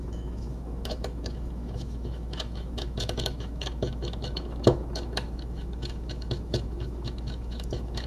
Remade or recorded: remade